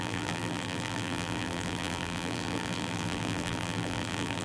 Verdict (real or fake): fake